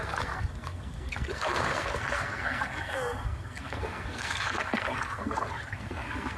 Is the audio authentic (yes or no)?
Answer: no